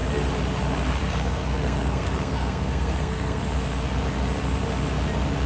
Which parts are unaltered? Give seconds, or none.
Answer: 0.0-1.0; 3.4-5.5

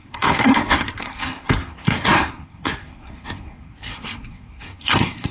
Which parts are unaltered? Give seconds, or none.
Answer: none

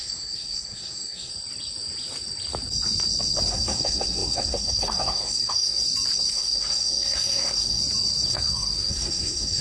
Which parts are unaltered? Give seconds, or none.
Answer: 1.3-3.5; 5.8-6.3; 7.8-8.3

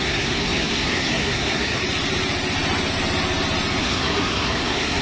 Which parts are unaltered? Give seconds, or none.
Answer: 1.8-3.8